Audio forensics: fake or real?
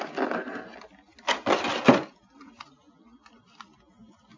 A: real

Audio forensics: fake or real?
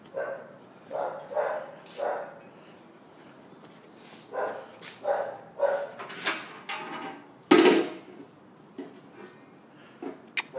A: real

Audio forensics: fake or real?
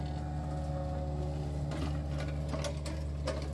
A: real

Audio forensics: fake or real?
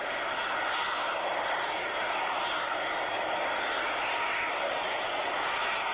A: real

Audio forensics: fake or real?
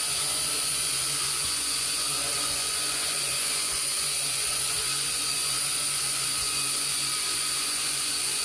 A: fake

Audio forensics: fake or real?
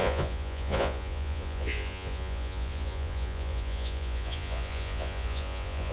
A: fake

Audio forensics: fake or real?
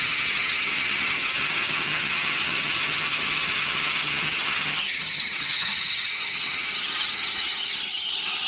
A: fake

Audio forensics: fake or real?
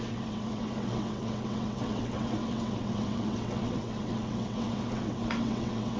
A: fake